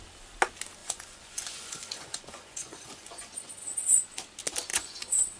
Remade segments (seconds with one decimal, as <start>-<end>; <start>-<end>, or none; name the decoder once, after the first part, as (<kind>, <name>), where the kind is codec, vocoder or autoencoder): 0.8-4.0 (vocoder, Vocos); 4.7-5.4